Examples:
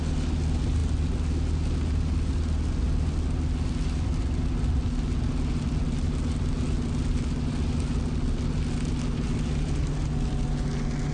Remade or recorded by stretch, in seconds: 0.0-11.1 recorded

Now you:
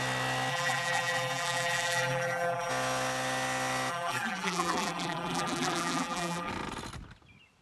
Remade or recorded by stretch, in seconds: 0.0-0.5 recorded; 0.5-2.7 remade; 2.7-3.9 recorded; 3.9-6.5 remade; 6.5-7.6 recorded

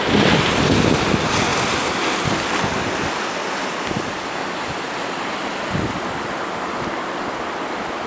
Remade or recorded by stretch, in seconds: 0.0-8.1 recorded

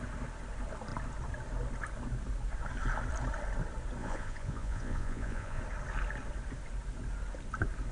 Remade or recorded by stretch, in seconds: 0.0-4.0 recorded; 4.0-5.6 remade; 5.6-7.9 recorded

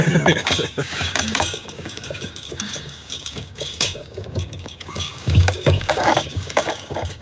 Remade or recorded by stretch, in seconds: 0.0-7.2 remade

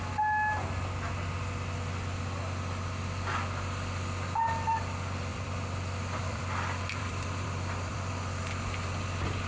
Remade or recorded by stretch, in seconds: 0.0-5.3 recorded; 5.3-8.1 remade; 8.1-9.5 recorded

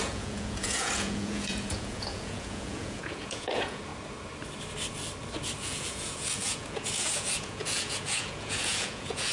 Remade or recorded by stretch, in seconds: 0.0-3.9 remade; 3.9-5.6 recorded; 5.6-9.3 remade

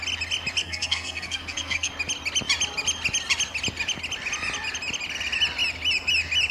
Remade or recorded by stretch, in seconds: 0.0-0.6 recorded; 0.6-1.9 remade; 1.9-6.5 recorded